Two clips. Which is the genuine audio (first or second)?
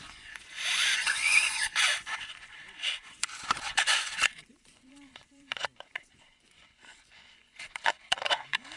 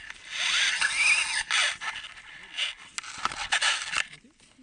second